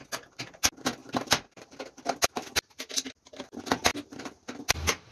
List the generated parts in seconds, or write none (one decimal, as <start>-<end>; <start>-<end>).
1.0-1.8